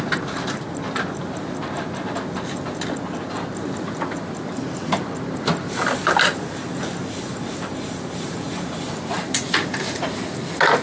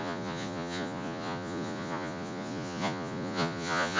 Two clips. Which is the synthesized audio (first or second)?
second